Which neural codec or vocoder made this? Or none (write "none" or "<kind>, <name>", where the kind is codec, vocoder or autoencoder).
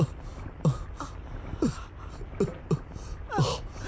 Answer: none